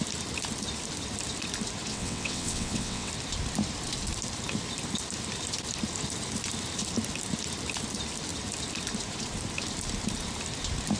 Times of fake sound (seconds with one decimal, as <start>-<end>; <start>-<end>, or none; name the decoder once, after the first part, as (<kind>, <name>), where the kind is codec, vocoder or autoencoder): 1.9-3.1 (vocoder, WaveNeXt)